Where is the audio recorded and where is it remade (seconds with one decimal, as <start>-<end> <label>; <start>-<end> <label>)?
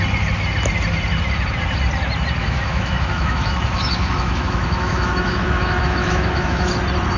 0.0-2.4 recorded; 2.4-6.7 remade; 6.7-7.2 recorded